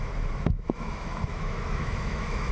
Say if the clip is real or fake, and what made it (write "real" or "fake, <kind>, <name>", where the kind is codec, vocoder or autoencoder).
fake, autoencoder, DAC-VAE